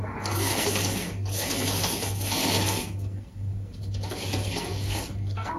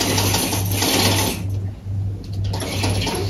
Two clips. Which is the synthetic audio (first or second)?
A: first